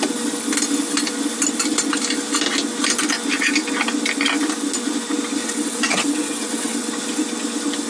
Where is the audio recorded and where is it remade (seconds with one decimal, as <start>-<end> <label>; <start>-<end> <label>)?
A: 0.0-5.4 recorded; 5.4-6.9 remade; 6.9-7.9 recorded